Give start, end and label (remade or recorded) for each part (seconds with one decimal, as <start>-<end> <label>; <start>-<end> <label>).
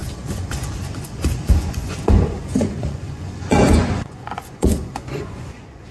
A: 0.0-5.9 remade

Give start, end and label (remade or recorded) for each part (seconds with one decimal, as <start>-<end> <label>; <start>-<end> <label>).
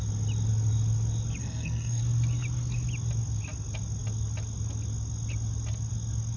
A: 0.0-1.4 recorded; 1.4-2.0 remade; 2.0-6.4 recorded